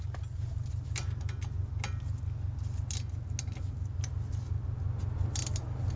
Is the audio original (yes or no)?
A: yes